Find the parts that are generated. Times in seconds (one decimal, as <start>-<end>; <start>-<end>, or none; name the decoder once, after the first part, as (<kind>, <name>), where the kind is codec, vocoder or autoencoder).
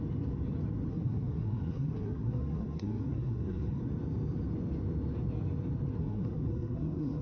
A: 0.9-3.8 (codec, SNAC); 6.0-7.2